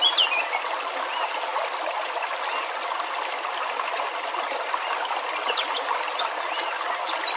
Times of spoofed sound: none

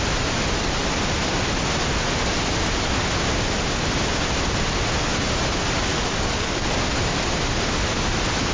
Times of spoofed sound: 5.9-6.7 (codec, DAC)

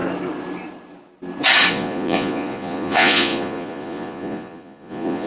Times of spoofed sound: 1.7-5.3 (vocoder, Vocos)

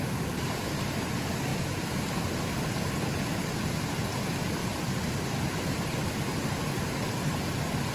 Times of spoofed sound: 4.6-7.3 (vocoder, BigVGAN v2)

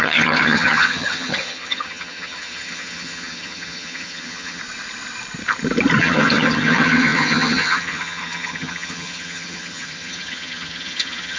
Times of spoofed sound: 0.0-4.6 (vocoder, HiFi-GAN); 6.0-11.4

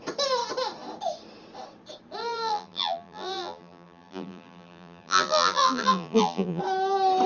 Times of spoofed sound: 2.2-6.6 (vocoder, BigVGAN v2)

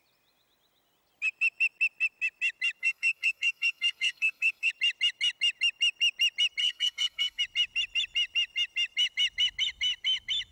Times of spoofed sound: 2.8-4.7 (codec, SNAC); 6.6-7.4